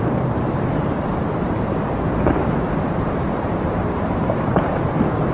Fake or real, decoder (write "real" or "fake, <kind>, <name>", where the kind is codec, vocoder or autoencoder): fake, vocoder, BigVGAN v2